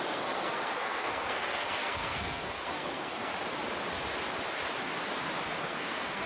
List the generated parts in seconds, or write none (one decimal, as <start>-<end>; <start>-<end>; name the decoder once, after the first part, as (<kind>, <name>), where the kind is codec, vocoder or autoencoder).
0.0-3.3 (codec, SNAC); 5.6-6.3